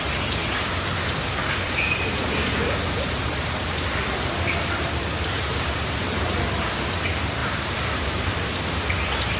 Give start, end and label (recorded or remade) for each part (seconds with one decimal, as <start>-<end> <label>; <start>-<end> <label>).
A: 0.0-1.4 recorded; 1.4-6.7 remade; 6.7-7.4 recorded; 7.4-8.3 remade; 8.3-9.4 recorded